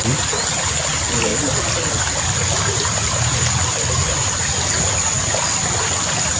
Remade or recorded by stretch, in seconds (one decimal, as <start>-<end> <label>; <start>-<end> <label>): 0.0-6.4 recorded